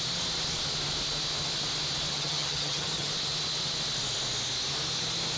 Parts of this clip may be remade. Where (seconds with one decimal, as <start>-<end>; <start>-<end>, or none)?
2.1-3.1